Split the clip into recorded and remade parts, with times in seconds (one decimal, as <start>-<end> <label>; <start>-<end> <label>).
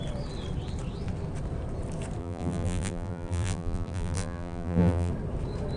0.0-2.2 recorded; 2.2-5.1 remade; 5.1-5.8 recorded